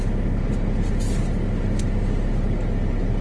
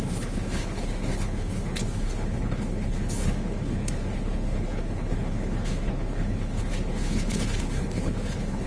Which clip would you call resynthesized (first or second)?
second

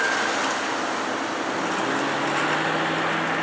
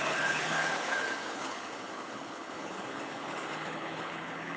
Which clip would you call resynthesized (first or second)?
second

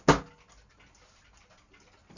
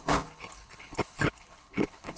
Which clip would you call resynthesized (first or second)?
second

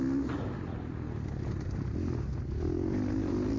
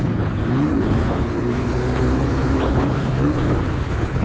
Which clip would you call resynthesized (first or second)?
second